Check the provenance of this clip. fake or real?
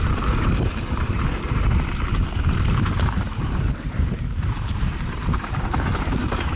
fake